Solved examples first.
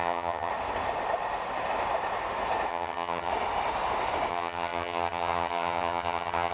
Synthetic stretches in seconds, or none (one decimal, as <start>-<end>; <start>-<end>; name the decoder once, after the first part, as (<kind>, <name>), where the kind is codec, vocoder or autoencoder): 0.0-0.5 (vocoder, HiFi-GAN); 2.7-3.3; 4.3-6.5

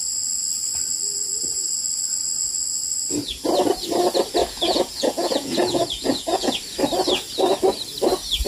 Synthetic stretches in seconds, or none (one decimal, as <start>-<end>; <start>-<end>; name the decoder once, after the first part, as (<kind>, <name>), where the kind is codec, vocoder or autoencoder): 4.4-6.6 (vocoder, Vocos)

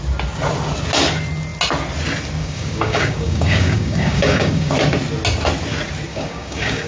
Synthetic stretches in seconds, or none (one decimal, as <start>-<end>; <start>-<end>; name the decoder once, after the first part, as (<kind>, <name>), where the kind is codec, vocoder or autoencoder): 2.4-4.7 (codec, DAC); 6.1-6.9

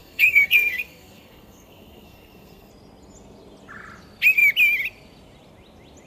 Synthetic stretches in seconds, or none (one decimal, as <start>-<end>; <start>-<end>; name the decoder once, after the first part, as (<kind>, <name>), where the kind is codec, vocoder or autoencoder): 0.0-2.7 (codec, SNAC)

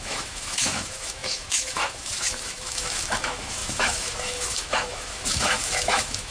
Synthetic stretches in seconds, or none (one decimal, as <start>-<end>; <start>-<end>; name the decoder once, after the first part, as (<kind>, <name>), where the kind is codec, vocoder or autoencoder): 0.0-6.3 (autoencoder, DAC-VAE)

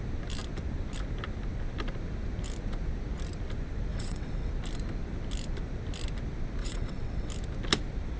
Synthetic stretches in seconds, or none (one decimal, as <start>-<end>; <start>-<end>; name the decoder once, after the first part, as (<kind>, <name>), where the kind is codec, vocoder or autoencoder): 3.9-4.5 (vocoder, WaveNeXt); 6.6-7.3

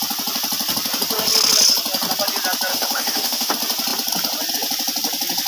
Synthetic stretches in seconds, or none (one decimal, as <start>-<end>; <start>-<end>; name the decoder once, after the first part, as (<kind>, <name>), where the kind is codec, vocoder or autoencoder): 2.7-3.5 (autoencoder, DAC-VAE)

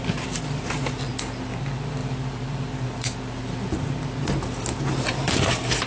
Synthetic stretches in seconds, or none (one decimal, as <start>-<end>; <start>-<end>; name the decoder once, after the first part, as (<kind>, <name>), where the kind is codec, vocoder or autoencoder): 2.0-3.2 (vocoder, BigVGAN v2)